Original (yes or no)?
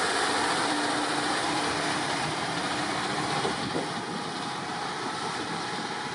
no